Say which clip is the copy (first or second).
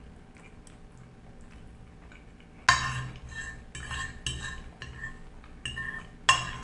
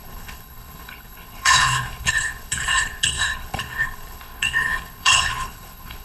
second